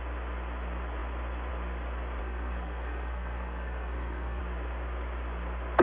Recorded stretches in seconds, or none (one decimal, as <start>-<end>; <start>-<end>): 0.0-2.2; 4.4-5.8